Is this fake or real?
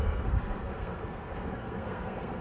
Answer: fake